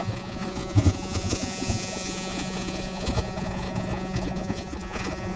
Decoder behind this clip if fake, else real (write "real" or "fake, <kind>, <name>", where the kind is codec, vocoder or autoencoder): fake, vocoder, Vocos